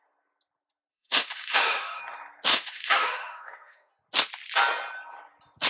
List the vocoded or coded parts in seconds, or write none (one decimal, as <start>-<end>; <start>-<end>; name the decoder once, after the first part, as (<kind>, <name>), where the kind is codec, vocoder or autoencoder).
0.9-2.0 (autoencoder, DAC-VAE); 2.5-3.9